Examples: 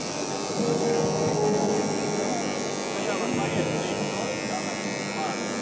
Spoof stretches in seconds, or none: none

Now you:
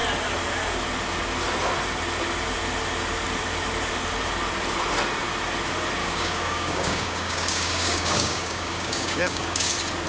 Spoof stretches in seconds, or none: 6.0-9.7 (codec, DAC)

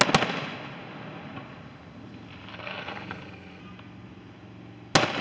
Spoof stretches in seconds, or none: 2.5-3.6 (codec, SNAC)

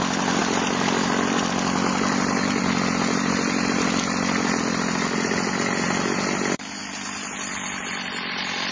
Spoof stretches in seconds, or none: none

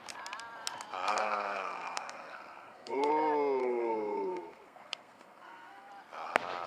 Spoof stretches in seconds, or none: 1.1-3.1 (codec, SNAC); 3.6-5.9

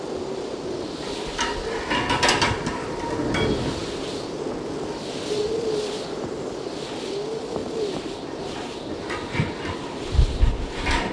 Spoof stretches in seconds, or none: none